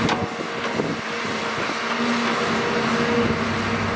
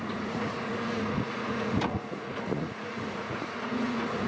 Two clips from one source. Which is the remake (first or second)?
second